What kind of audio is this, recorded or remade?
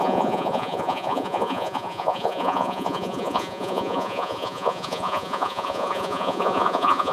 remade